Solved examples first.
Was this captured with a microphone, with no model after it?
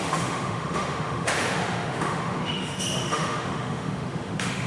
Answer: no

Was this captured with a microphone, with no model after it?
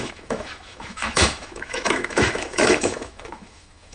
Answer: no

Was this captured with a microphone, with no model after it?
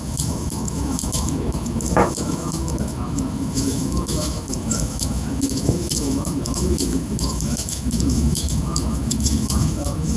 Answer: no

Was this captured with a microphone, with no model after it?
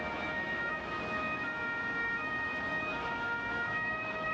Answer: no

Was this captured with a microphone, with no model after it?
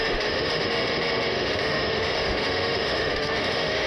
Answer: no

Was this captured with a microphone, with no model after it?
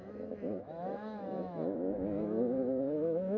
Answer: no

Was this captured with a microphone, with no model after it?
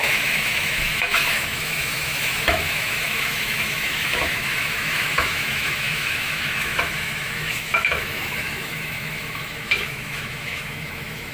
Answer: no